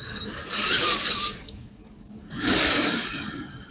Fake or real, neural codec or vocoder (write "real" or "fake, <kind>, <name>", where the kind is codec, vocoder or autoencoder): fake, codec, DAC